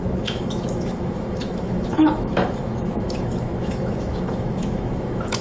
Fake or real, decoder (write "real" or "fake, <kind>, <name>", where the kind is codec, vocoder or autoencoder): fake, autoencoder, DAC-VAE